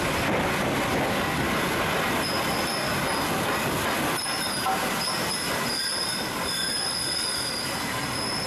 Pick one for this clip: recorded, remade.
recorded